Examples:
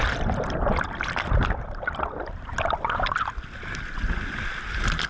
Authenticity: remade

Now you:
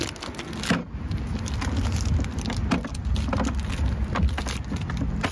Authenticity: recorded